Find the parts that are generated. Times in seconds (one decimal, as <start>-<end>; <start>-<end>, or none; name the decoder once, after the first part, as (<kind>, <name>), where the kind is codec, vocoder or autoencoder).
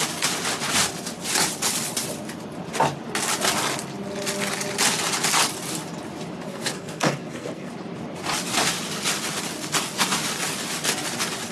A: 6.5-7.7 (codec, SNAC)